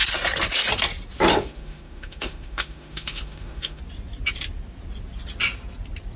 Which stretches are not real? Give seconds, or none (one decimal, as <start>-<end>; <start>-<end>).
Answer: 1.3-3.8